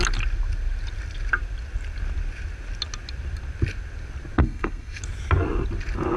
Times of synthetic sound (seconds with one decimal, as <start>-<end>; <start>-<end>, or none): 4.4-5.0